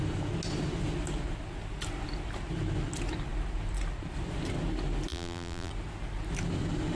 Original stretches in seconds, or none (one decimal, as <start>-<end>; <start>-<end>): 0.0-5.1; 5.7-6.9